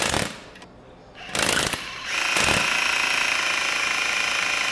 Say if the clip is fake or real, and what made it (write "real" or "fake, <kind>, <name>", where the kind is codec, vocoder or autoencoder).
real